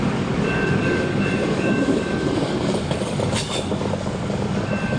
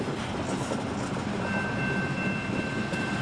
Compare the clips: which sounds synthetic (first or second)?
first